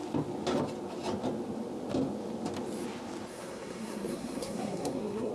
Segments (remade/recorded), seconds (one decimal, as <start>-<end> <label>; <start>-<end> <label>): 0.0-3.3 recorded; 3.3-5.3 remade